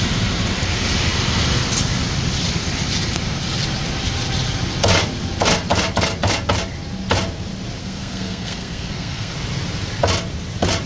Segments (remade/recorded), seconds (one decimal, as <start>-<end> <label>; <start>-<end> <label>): 0.0-7.8 recorded; 7.8-9.3 remade; 9.3-10.9 recorded